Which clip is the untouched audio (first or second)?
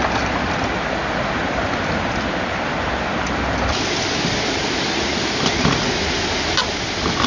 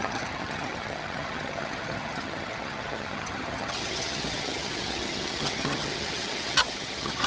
first